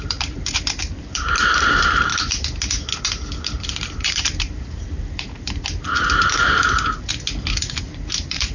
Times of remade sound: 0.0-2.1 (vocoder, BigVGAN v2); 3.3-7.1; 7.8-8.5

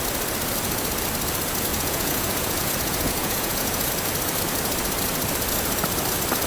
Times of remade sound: 1.7-3.9 (vocoder, Vocos)

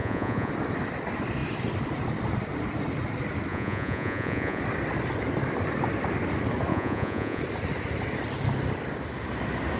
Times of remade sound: 0.0-0.5 (vocoder, Vocos); 3.5-4.6; 6.7-7.4